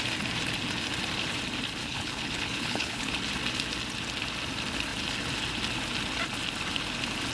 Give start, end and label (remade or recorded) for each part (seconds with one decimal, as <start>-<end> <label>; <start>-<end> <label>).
0.0-1.8 recorded; 1.8-3.1 remade; 3.1-7.3 recorded